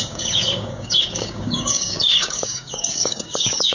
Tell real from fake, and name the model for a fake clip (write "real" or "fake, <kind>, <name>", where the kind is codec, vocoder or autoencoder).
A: fake, codec, DAC